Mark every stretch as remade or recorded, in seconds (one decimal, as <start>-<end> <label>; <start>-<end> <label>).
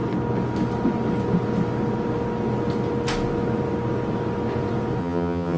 0.0-5.0 recorded; 5.0-5.6 remade